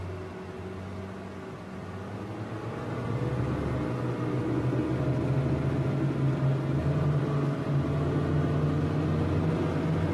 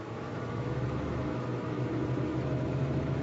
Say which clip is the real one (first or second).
first